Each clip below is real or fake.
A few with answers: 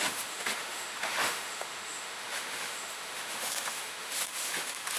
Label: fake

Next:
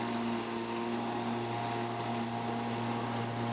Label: real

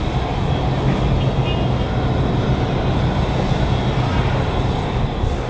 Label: real